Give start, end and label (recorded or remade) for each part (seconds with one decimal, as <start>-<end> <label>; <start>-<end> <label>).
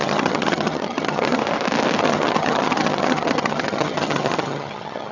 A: 0.0-1.4 remade; 1.4-2.0 recorded; 2.0-5.1 remade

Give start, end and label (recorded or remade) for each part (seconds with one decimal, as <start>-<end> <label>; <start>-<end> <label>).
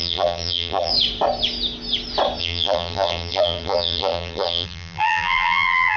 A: 0.0-0.9 remade; 0.9-2.4 recorded; 2.4-6.0 remade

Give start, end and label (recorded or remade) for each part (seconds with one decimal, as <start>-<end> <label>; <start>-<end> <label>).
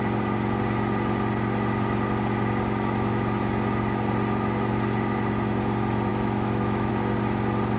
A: 0.0-6.1 recorded; 6.1-6.9 remade; 6.9-7.8 recorded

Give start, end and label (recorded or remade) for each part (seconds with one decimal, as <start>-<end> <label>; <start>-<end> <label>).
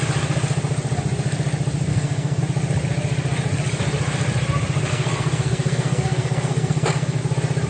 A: 0.0-1.9 recorded; 1.9-2.4 remade; 2.4-4.9 recorded; 4.9-7.2 remade; 7.2-7.7 recorded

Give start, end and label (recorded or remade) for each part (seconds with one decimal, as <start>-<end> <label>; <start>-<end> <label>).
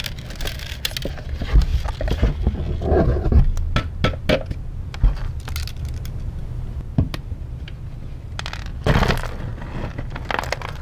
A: 0.0-10.8 recorded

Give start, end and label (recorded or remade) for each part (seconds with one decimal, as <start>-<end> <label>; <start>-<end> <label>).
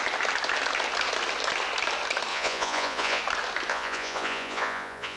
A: 0.0-2.3 recorded; 2.3-3.2 remade; 3.2-3.7 recorded; 3.7-5.2 remade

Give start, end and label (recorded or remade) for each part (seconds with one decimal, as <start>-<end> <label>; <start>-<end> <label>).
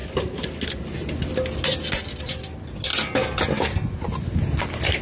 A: 0.0-5.0 recorded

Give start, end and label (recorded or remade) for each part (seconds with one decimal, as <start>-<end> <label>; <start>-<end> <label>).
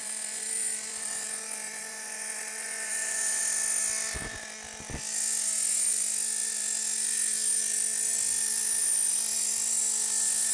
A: 0.0-3.4 remade; 3.4-10.5 recorded